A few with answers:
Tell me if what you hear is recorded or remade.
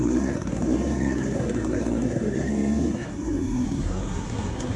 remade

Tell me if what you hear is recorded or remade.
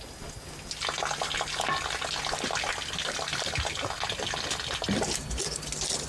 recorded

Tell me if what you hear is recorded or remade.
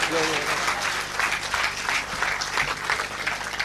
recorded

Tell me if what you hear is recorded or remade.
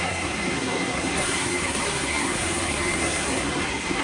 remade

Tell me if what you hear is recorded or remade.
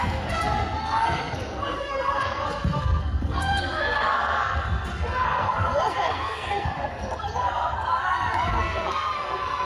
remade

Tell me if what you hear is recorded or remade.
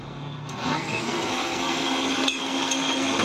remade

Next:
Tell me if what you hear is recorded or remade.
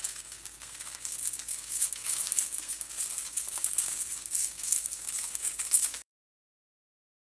remade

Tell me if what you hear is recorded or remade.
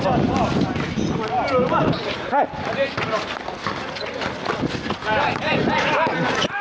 recorded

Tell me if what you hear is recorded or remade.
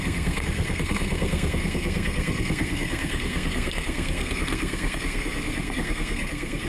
remade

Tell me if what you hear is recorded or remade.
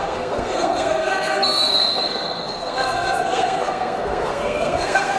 remade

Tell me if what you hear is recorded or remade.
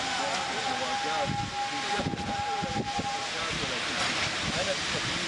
recorded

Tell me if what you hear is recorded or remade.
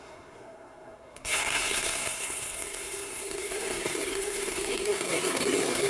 remade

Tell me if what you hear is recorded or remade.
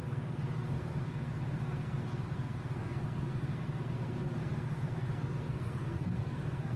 remade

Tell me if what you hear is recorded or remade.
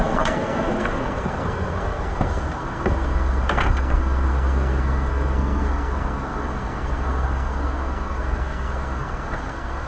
remade